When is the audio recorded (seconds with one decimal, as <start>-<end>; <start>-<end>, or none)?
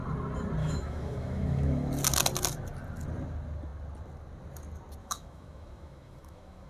0.0-0.6; 1.9-5.0